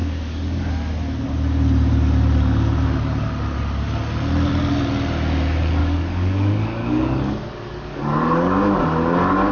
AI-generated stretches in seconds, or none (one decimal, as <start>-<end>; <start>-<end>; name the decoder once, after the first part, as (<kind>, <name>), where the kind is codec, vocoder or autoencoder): 0.0-0.7 (codec, DAC); 5.8-8.8